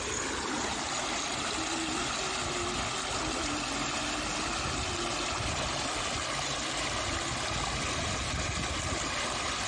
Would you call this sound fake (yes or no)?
no